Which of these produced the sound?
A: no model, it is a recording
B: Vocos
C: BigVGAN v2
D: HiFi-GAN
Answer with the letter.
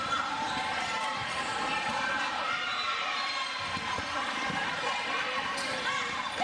C